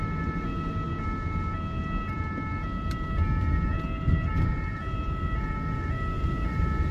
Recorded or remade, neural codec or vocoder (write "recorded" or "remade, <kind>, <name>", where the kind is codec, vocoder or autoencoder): recorded